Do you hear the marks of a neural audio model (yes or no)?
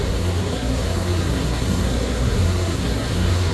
yes